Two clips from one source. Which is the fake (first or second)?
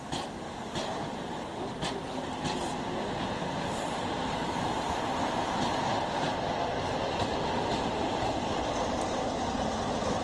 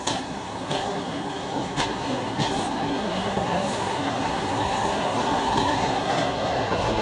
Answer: second